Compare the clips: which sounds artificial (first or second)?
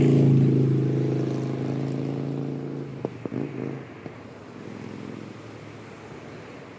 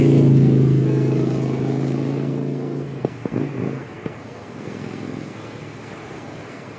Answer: second